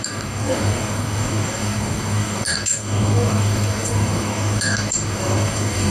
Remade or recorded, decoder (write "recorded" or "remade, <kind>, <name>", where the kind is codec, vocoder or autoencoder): remade, codec, DAC